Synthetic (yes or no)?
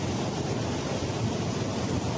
no